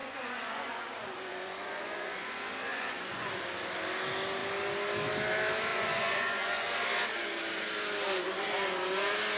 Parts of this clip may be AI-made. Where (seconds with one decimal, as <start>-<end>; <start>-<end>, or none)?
0.0-2.3; 2.7-3.3; 5.7-6.8